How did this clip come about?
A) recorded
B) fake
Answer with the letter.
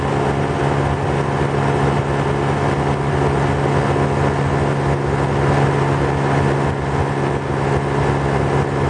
A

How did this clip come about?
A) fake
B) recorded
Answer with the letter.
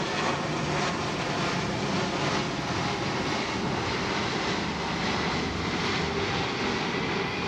B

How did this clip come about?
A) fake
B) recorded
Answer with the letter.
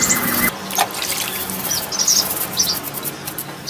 B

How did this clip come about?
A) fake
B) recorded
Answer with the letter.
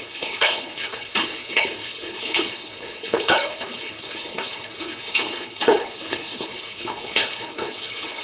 A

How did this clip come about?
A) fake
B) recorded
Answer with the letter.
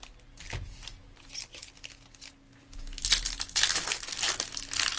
B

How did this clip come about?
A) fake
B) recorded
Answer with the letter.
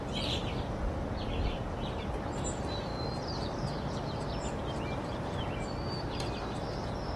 A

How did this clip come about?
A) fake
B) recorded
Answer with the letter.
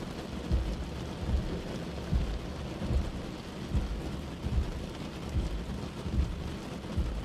B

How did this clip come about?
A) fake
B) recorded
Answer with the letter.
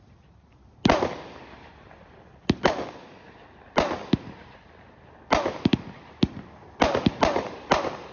B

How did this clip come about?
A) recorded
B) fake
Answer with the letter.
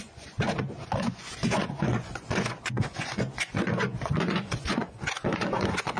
B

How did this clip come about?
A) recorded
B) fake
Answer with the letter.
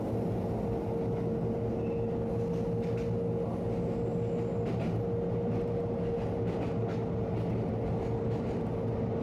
A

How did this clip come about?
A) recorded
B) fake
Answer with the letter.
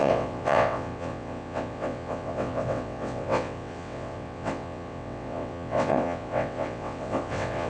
B